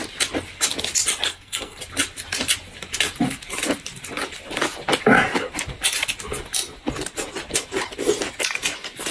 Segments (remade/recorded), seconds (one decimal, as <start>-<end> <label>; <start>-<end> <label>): 0.0-1.3 recorded; 1.3-1.8 remade; 1.8-9.1 recorded